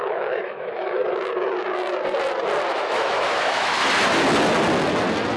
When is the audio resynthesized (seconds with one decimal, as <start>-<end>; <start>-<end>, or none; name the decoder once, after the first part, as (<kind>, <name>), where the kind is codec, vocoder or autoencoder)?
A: 0.0-1.0 (autoencoder, DAC-VAE); 2.7-3.8